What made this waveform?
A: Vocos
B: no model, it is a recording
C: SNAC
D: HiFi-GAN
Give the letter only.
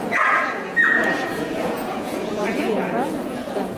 A